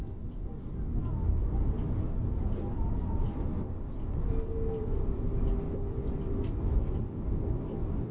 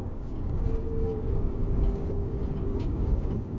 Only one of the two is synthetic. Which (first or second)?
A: second